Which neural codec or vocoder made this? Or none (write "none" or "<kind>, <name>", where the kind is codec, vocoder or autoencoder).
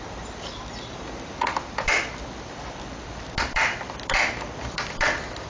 none